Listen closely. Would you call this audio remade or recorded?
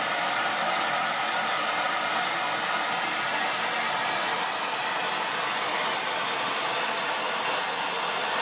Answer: recorded